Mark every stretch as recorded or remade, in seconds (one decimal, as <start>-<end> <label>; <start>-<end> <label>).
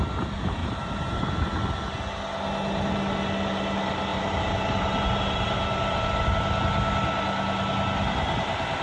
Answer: 0.0-0.6 recorded; 0.6-1.3 remade; 1.3-4.1 recorded; 4.1-6.0 remade; 6.0-8.8 recorded